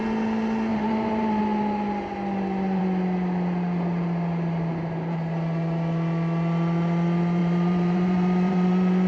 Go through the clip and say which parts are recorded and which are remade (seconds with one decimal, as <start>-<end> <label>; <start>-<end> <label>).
0.0-0.7 recorded; 0.7-1.4 remade; 1.4-7.4 recorded; 7.4-9.1 remade